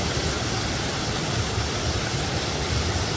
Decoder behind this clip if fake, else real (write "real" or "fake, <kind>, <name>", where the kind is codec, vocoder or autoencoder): real